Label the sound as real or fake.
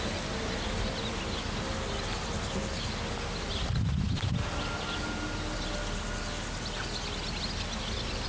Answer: real